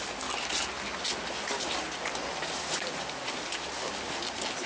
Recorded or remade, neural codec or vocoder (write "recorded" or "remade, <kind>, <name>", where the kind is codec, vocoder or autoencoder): recorded